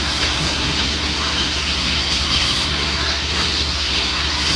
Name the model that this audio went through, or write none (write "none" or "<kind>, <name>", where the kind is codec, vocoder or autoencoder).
codec, SNAC